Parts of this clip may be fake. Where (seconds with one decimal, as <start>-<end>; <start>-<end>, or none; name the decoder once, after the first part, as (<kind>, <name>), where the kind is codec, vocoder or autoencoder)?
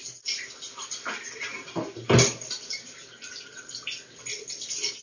none